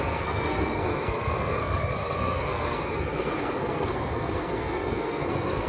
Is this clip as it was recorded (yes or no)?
no